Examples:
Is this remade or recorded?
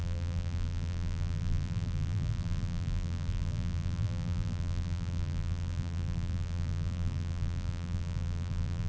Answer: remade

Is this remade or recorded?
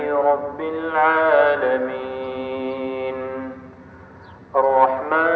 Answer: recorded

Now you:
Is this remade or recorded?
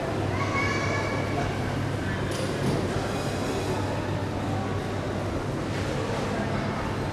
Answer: recorded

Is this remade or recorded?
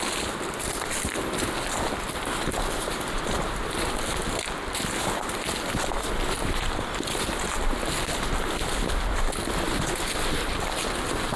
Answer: recorded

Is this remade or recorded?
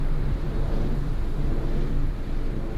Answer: remade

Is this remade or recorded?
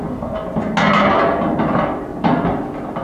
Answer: recorded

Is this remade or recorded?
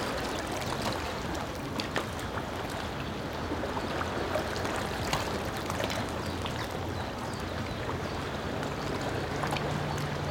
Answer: recorded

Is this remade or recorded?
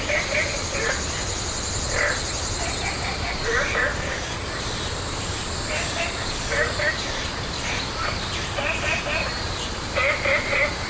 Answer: recorded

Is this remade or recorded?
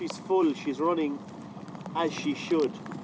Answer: recorded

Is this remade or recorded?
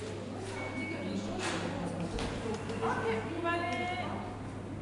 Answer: recorded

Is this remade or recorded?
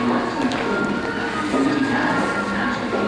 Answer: recorded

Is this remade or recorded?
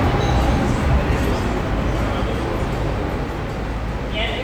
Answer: recorded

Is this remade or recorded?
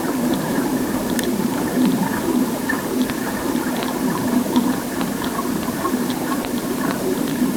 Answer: remade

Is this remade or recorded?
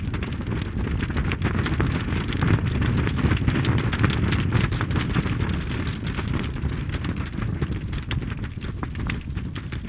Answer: recorded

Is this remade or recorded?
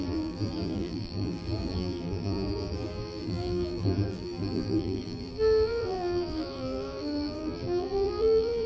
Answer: remade